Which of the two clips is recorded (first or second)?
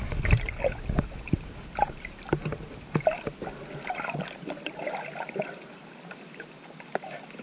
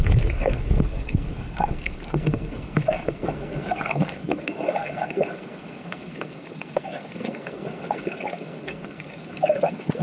first